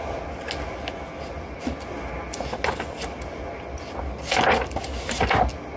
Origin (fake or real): real